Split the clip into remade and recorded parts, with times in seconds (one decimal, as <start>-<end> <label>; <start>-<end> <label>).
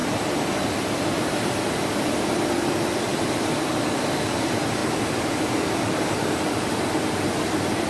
0.0-2.1 remade; 2.1-4.8 recorded; 4.8-6.9 remade; 6.9-7.9 recorded